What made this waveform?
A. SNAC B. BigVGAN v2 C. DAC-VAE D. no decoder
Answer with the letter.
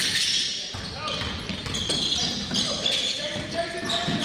D